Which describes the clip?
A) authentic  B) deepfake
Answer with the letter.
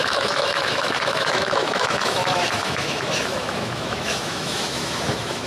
B